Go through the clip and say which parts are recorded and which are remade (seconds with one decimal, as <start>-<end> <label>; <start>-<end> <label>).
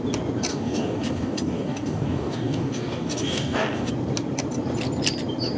0.0-0.5 recorded; 0.5-3.9 remade; 3.9-5.6 recorded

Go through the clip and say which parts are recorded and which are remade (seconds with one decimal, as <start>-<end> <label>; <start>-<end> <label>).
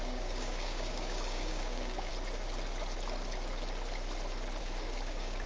0.0-2.1 remade; 2.1-4.6 recorded; 4.6-5.5 remade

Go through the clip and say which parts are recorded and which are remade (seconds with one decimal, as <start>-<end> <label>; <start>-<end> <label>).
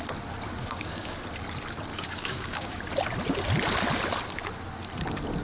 0.0-0.6 recorded; 0.6-1.2 remade; 1.2-1.9 recorded; 1.9-2.8 remade; 2.8-5.4 recorded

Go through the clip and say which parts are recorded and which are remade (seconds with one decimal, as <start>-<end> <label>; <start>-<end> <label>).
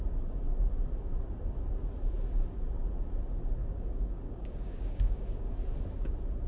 0.0-3.6 recorded; 3.6-5.5 remade; 5.5-6.5 recorded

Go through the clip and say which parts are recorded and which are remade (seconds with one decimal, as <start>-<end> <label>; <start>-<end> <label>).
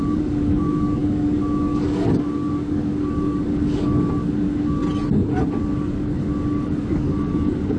0.0-4.8 remade; 4.8-5.6 recorded; 5.6-7.8 remade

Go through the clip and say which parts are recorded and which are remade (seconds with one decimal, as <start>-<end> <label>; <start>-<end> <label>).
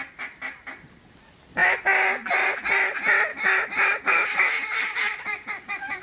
0.0-3.3 recorded; 3.3-6.0 remade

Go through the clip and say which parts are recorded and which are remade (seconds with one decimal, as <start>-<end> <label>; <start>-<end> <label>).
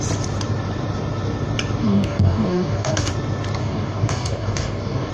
0.0-1.8 recorded; 1.8-3.1 remade; 3.1-3.6 recorded; 3.6-5.1 remade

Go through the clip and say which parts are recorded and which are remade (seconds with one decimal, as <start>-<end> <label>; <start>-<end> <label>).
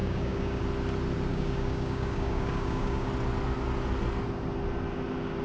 0.0-0.6 remade; 0.6-1.3 recorded; 1.3-3.1 remade; 3.1-5.4 recorded